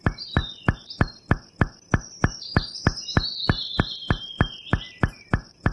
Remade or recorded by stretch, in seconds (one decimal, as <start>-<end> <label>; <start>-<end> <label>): 0.0-0.4 remade; 0.4-3.8 recorded; 3.8-5.7 remade